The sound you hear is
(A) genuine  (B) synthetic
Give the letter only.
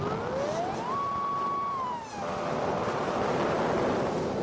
A